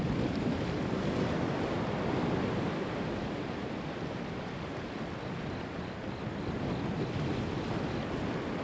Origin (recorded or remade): recorded